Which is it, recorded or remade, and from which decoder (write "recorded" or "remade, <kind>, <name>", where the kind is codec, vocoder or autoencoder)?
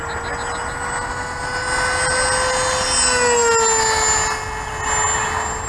recorded